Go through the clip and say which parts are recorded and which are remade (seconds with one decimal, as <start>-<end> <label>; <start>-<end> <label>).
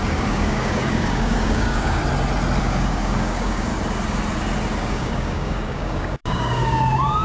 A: 0.0-2.0 remade; 2.0-2.6 recorded; 2.6-3.7 remade; 3.7-4.9 recorded; 4.9-7.2 remade